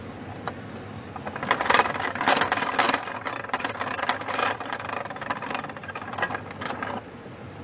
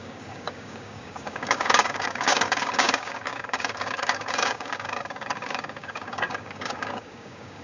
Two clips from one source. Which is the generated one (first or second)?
second